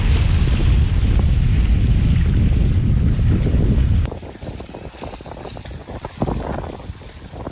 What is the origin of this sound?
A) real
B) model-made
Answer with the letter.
A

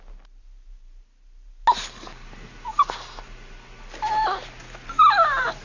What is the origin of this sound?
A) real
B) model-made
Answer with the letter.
A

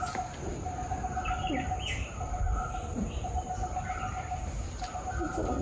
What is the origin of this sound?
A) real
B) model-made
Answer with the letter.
B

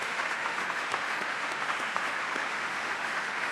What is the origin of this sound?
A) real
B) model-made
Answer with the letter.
B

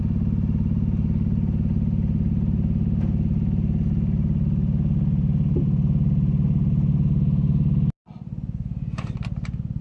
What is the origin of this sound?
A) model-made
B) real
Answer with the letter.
B